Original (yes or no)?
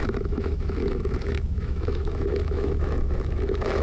no